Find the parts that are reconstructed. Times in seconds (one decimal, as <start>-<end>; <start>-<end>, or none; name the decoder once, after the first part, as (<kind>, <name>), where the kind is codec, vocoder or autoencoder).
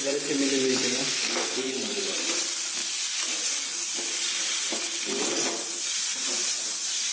1.0-1.7 (codec, SNAC)